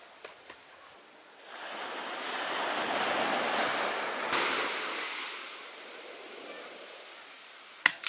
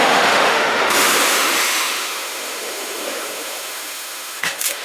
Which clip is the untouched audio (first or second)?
first